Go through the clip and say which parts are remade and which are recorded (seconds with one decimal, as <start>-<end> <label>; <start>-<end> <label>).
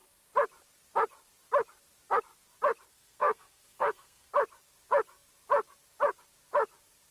0.0-2.9 recorded; 2.9-4.3 remade; 4.3-7.1 recorded